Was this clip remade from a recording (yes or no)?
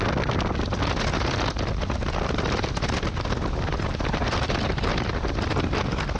no